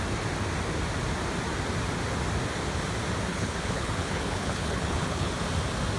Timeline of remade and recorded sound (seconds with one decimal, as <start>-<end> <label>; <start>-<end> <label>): 0.0-3.3 recorded; 3.3-5.3 remade; 5.3-6.0 recorded